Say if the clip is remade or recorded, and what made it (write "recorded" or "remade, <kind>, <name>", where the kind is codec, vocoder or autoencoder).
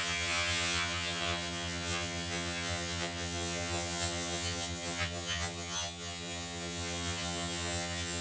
remade, vocoder, HiFi-GAN